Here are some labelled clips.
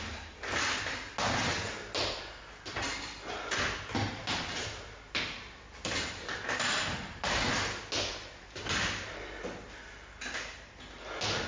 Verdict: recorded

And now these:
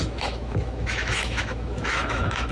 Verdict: remade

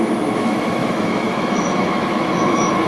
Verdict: remade